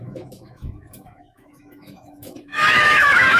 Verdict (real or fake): fake